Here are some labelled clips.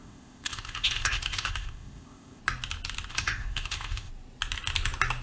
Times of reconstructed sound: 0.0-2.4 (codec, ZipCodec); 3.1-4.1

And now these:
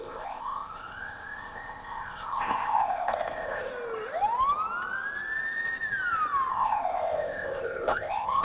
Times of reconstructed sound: 0.0-3.7 (codec, ZipCodec); 6.5-8.4

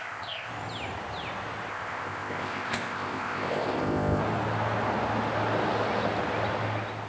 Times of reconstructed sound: 0.0-0.5 (codec, ZipCodec); 1.7-4.2